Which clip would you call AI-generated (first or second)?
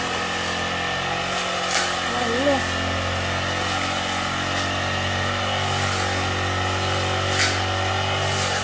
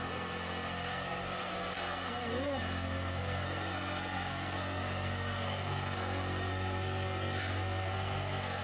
second